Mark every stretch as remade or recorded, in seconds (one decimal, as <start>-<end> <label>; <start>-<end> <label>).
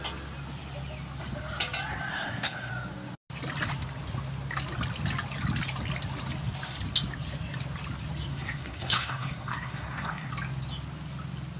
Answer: 0.0-2.1 recorded; 2.1-2.7 remade; 2.7-8.3 recorded; 8.3-10.3 remade; 10.3-11.6 recorded